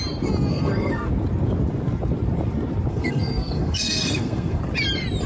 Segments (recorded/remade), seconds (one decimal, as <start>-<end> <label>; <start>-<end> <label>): 0.0-0.5 recorded; 0.5-1.1 remade; 1.1-2.9 recorded; 2.9-4.6 remade; 4.6-5.3 recorded